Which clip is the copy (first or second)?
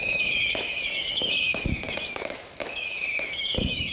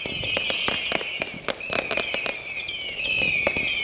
first